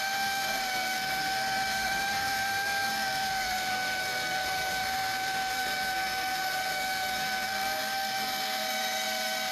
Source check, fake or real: fake